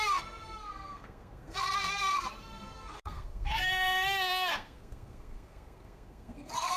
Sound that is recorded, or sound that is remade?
remade